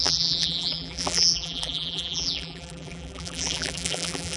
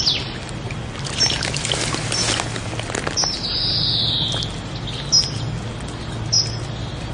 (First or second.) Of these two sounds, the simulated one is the first